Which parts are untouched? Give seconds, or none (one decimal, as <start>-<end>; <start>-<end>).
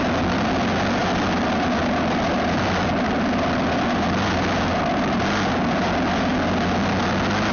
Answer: 0.0-7.5